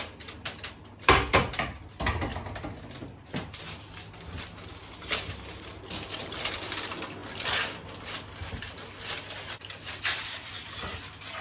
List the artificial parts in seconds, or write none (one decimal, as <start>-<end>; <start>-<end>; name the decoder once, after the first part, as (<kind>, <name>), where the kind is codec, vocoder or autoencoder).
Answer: 7.2-10.5 (vocoder, BigVGAN v2)